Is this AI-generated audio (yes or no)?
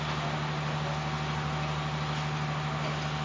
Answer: no